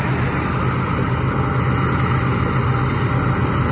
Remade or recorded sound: recorded